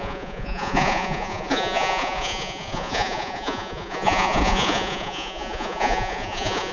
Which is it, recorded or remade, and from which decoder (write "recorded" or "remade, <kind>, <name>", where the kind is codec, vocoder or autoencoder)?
remade, vocoder, Vocos